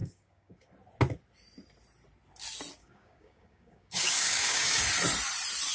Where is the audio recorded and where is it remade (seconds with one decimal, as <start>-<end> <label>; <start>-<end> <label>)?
0.0-0.7 remade; 0.7-2.8 recorded; 2.8-4.8 remade; 4.8-5.7 recorded